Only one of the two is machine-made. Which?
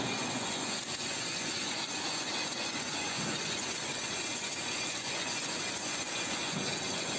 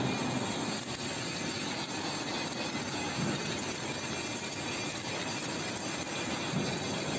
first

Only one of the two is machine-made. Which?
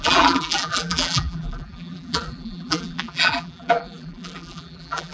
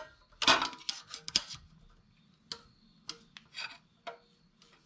first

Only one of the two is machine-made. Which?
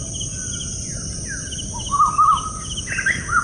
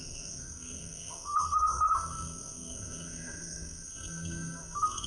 second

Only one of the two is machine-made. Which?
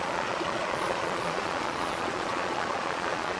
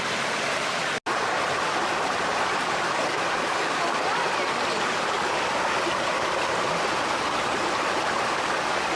first